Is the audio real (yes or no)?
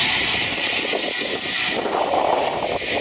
yes